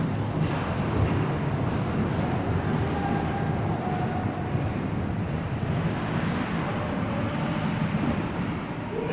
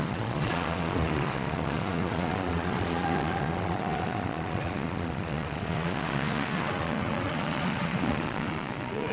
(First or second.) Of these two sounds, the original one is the first